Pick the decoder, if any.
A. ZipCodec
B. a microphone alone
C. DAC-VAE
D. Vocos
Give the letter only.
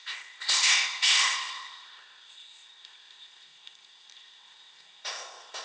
A